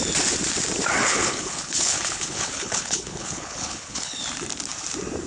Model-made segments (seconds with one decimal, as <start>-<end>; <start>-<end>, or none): 1.0-4.2